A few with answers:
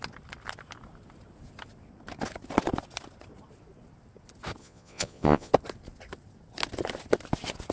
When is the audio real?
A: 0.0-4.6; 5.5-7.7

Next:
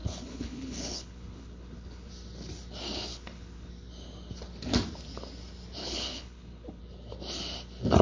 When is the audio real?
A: 2.1-3.1; 3.7-5.8; 6.8-8.0